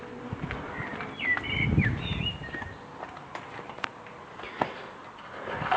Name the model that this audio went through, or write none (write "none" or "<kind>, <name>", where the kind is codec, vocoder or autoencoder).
none